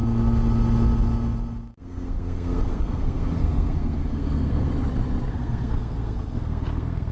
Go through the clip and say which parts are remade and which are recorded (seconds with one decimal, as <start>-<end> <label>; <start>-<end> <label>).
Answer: 0.0-1.8 recorded; 1.8-4.7 remade; 4.7-5.3 recorded; 5.3-7.1 remade